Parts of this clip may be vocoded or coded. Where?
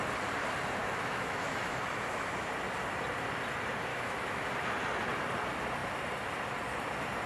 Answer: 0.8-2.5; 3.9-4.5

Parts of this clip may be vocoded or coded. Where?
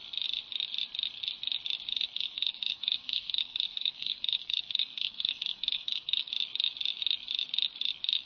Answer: 1.9-6.3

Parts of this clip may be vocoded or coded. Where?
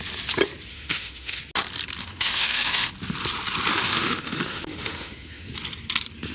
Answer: 0.7-1.4; 2.0-2.9; 3.7-5.5